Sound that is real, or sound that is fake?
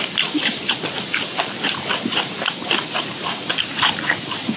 fake